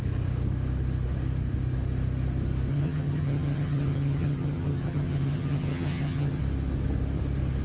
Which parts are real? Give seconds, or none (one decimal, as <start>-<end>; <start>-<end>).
0.0-2.7; 6.4-7.6